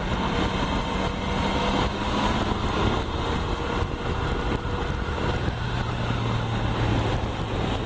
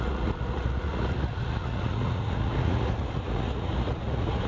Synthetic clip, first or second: second